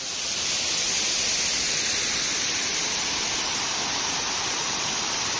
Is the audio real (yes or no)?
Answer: no